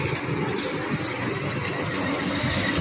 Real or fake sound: real